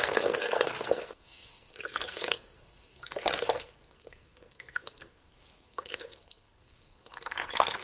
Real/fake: fake